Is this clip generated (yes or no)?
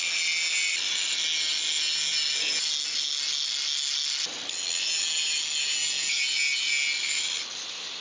no